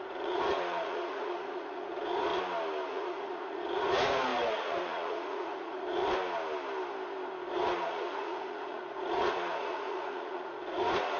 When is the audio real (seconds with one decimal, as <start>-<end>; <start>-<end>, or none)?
2.3-2.9; 6.0-7.5